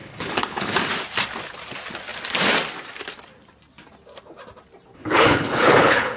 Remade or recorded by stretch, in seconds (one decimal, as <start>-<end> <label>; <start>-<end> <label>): 0.0-0.7 remade; 0.7-4.9 recorded; 4.9-6.2 remade